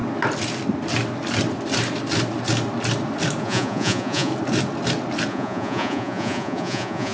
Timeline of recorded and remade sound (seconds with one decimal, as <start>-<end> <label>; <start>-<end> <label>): 0.0-3.4 recorded; 3.4-4.3 remade; 4.3-5.3 recorded; 5.3-7.1 remade